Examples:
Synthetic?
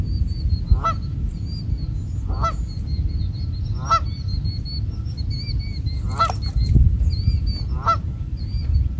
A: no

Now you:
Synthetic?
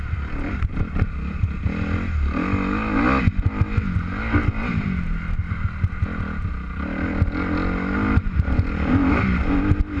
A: no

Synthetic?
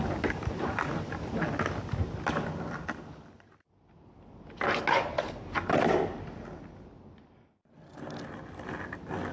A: no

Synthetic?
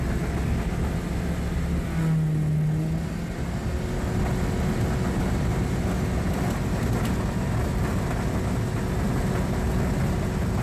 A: no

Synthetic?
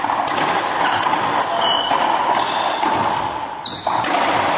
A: no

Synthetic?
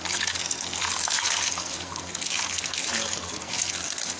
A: yes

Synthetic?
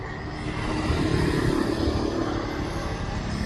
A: no